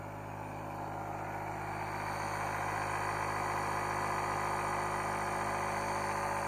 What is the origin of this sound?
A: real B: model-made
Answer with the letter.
A